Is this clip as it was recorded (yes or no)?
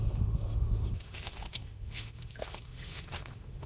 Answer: no